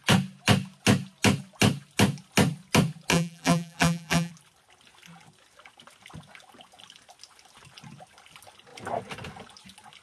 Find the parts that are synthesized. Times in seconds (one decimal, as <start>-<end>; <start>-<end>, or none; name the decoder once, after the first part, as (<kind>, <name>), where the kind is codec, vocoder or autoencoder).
3.1-4.3 (vocoder, BigVGAN v2)